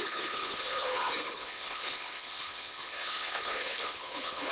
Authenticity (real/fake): fake